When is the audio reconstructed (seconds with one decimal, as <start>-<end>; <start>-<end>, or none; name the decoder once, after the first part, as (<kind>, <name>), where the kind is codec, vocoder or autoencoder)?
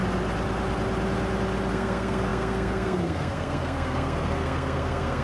1.7-5.2 (codec, SNAC)